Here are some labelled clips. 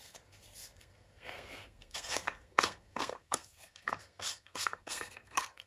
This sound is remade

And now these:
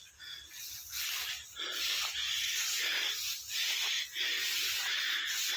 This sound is recorded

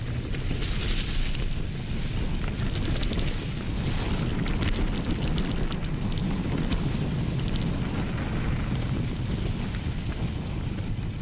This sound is recorded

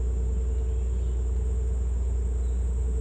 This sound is recorded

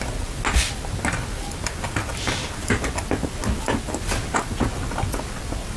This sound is recorded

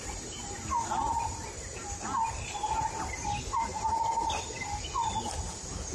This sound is recorded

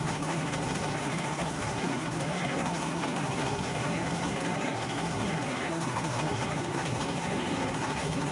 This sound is remade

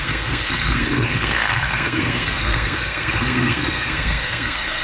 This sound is remade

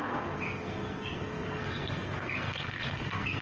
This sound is remade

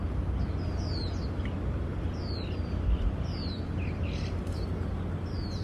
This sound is recorded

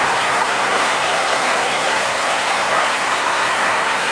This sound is remade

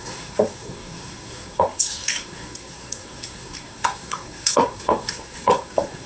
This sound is remade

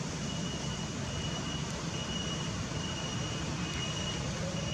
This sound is recorded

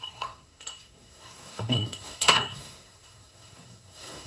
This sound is remade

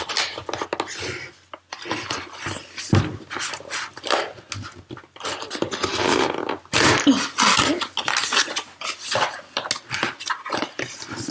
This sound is recorded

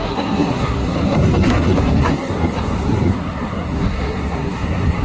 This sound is remade